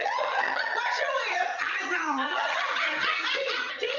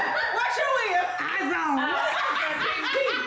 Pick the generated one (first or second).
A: first